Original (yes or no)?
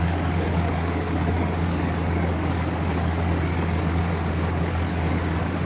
no